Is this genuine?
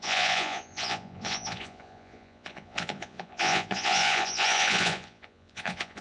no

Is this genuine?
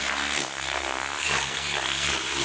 no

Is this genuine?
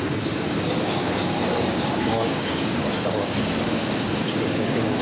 no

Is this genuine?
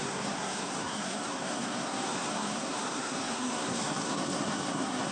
no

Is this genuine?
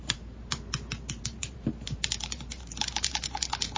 no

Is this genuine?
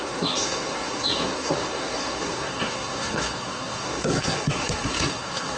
no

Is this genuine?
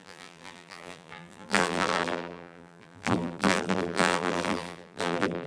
no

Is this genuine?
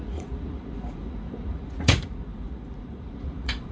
no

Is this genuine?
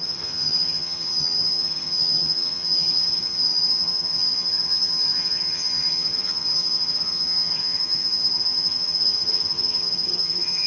no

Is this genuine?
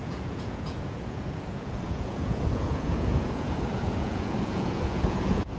no